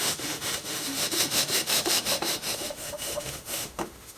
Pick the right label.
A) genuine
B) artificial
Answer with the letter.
B